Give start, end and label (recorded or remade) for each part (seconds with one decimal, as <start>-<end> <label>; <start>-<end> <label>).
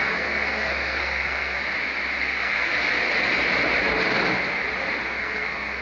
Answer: 0.0-1.6 remade; 1.6-2.2 recorded; 2.2-2.7 remade; 2.7-5.0 recorded; 5.0-5.8 remade